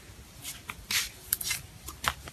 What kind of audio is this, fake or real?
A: real